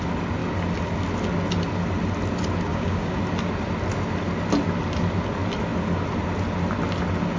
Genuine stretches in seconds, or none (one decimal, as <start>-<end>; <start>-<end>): 0.0-2.7; 3.2-7.4